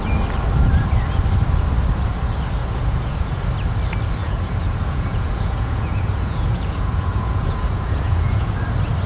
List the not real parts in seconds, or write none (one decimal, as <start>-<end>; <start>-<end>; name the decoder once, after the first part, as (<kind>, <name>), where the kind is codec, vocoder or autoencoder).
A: 2.6-3.4 (vocoder, Vocos); 4.2-8.5